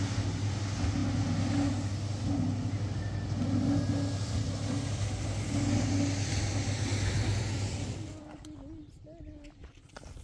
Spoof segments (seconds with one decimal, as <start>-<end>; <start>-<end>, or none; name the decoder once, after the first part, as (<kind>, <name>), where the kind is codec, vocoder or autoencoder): 6.9-8.8 (vocoder, BigVGAN v2)